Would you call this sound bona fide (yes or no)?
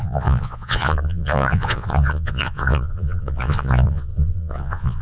no